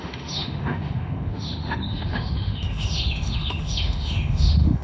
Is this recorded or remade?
remade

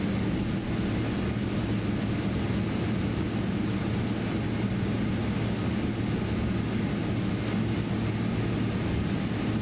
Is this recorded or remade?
recorded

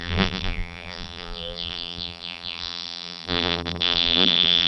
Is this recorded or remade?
remade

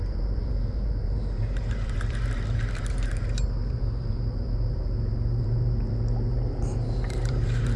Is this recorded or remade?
remade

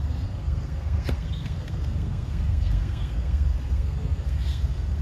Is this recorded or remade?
remade